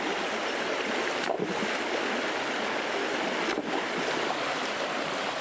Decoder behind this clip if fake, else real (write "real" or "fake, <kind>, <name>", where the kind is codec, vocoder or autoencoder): real